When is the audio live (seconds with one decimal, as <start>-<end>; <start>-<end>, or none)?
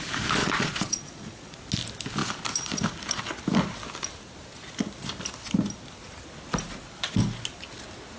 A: 0.0-0.4; 1.6-8.2